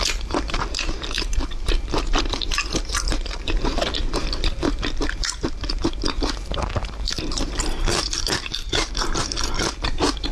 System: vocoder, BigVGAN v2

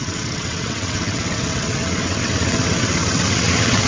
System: vocoder, WaveNeXt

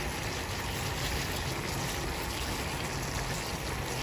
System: none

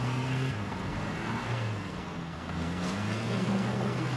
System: codec, SNAC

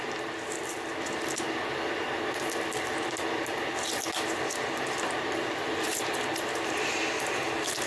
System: none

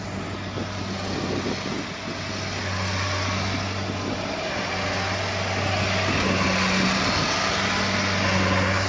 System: none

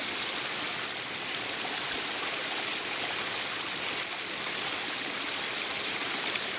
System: none